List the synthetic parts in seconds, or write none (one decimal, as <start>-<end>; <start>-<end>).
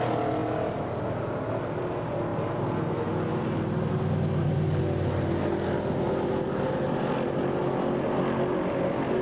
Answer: none